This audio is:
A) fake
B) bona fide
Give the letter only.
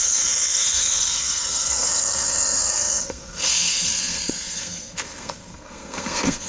A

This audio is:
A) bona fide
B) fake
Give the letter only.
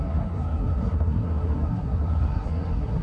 B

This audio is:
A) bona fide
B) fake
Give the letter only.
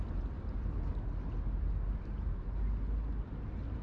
A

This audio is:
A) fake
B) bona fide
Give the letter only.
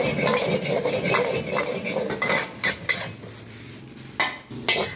B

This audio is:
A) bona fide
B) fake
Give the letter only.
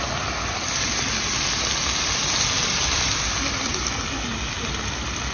A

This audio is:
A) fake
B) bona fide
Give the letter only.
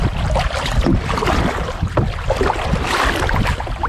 B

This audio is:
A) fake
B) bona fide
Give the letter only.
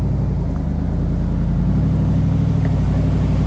B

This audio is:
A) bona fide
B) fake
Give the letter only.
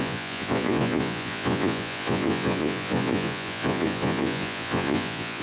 B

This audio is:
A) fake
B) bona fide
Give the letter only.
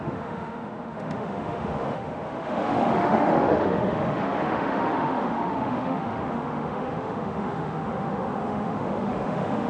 A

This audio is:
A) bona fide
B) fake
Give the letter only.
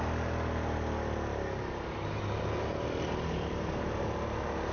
A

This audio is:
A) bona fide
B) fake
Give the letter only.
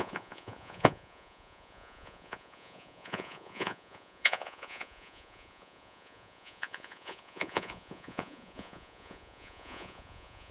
B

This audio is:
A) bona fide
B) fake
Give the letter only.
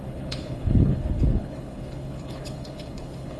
B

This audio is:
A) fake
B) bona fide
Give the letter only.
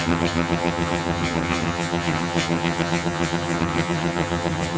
A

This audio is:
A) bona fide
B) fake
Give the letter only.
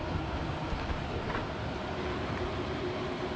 A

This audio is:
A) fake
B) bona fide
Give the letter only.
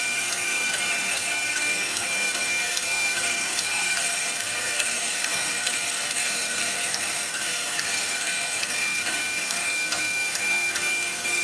A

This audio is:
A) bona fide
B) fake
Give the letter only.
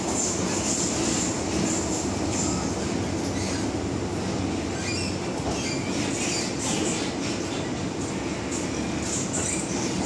A